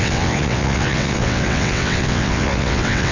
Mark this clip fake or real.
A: fake